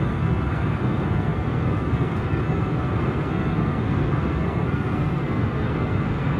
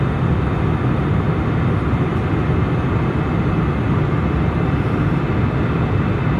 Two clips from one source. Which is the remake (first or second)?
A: first